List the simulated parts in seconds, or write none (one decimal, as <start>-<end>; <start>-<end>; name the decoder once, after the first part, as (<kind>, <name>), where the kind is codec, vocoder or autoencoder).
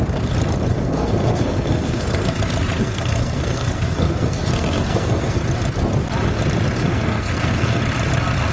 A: 0.7-2.4 (codec, SNAC); 2.8-5.4; 6.9-7.8